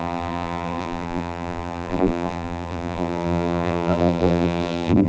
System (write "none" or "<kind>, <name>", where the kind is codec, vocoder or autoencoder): vocoder, BigVGAN v2